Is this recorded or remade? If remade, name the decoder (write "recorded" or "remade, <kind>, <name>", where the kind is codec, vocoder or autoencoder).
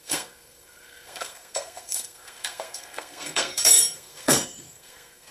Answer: remade, codec, SNAC